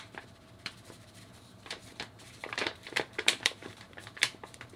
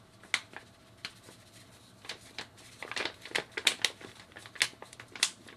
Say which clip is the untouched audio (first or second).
second